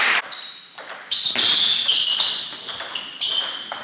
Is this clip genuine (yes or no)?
yes